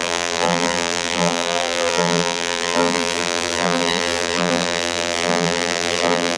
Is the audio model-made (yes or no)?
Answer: yes